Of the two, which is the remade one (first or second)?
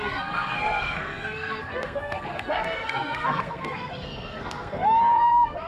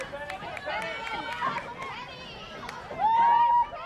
first